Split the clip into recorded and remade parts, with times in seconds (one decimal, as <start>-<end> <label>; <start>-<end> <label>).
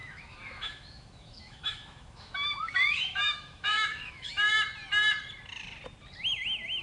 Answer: 0.0-4.5 remade; 4.5-6.8 recorded